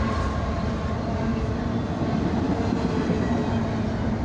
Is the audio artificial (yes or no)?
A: no